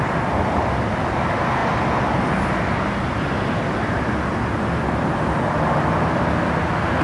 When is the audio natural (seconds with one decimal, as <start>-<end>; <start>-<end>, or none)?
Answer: 0.0-7.0